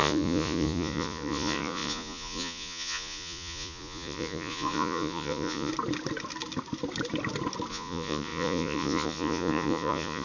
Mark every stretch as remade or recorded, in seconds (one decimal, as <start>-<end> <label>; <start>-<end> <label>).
0.0-5.7 remade; 5.7-7.7 recorded; 7.7-10.2 remade